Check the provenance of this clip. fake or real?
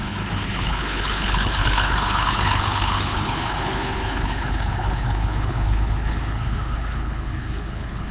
fake